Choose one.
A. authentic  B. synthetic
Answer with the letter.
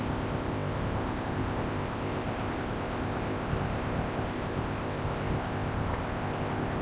B